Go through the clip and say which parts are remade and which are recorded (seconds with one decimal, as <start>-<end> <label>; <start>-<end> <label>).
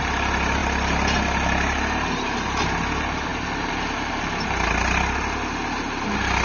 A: 0.0-6.4 recorded